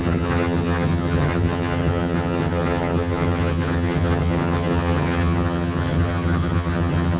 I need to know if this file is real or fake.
fake